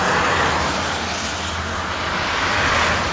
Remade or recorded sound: recorded